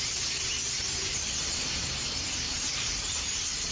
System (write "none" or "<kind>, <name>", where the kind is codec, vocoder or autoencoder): vocoder, BigVGAN v2